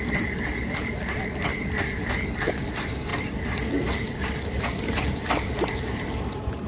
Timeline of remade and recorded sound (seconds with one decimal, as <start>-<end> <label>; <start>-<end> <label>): 0.0-6.7 recorded